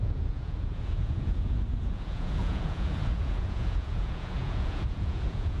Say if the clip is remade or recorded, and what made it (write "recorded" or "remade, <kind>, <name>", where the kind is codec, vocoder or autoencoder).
remade, vocoder, Vocos